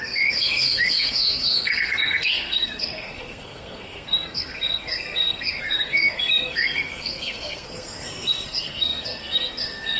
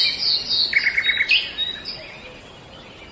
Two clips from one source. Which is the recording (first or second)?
second